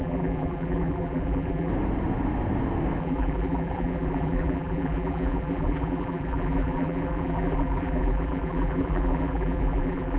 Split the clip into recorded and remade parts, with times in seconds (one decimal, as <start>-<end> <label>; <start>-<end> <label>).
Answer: 0.0-1.7 remade; 1.7-3.0 recorded; 3.0-10.2 remade